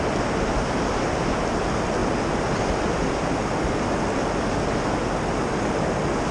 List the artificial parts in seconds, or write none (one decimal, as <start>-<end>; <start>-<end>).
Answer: none